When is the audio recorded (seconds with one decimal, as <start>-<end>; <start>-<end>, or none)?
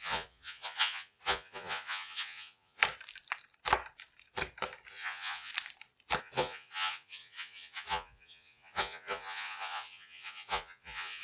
2.8-4.9; 5.5-6.2